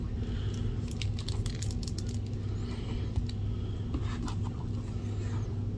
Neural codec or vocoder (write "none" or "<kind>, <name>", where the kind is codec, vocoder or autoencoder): none